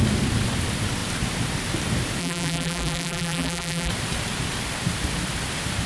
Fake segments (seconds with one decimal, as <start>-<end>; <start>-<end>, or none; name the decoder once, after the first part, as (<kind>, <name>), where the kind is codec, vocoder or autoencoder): 2.2-3.9 (vocoder, BigVGAN v2)